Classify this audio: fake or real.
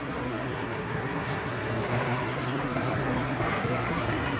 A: fake